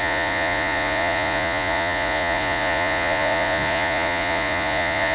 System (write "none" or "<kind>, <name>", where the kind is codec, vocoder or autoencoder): vocoder, Vocos